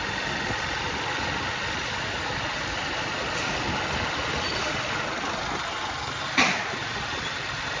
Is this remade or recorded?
recorded